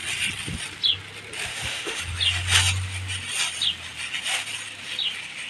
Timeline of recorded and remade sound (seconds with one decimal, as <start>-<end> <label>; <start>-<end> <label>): 0.0-1.5 recorded; 1.5-2.0 remade; 2.0-5.5 recorded